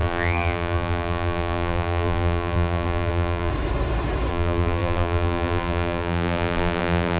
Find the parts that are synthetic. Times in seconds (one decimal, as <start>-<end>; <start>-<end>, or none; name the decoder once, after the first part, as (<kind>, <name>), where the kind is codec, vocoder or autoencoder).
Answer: 0.0-3.5 (vocoder, BigVGAN v2); 4.3-7.2